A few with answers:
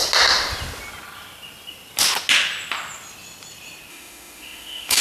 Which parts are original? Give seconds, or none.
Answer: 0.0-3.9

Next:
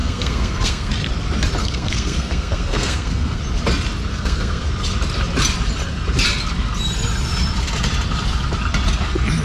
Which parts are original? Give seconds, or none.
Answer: 0.9-1.6; 3.4-4.1; 4.7-9.4

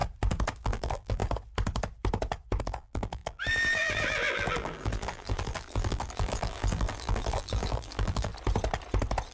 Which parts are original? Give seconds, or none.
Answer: 0.0-0.6; 1.2-2.6; 8.3-9.3

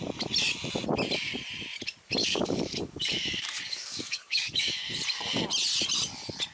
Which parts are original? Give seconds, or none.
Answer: 0.0-2.2; 4.8-6.5

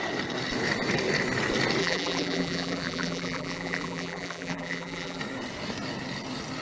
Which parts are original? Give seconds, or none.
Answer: 0.0-1.8; 5.2-6.6

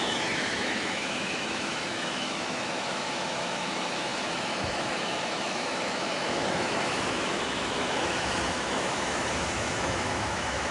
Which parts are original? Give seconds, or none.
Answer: none